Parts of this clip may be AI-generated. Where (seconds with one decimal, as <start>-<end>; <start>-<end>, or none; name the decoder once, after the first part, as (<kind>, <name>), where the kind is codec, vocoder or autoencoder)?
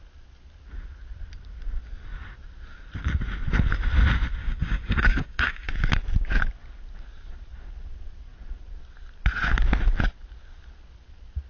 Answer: 4.4-5.7 (codec, DAC)